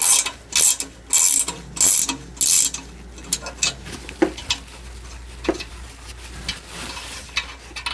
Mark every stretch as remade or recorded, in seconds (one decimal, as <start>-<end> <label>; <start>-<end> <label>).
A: 0.0-7.9 recorded